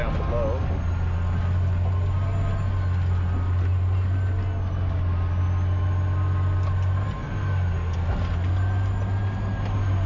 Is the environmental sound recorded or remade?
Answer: recorded